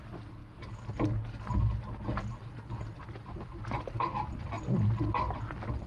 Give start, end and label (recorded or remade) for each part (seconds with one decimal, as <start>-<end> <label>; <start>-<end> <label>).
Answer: 0.0-5.9 recorded